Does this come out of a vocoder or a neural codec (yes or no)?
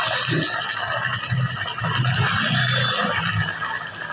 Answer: no